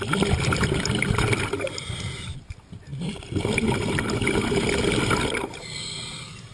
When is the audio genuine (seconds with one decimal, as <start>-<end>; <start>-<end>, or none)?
0.0-6.5